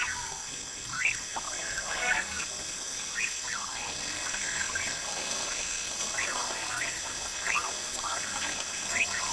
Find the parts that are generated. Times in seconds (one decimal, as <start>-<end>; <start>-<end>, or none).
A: 0.0-9.3